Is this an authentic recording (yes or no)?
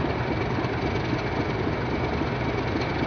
yes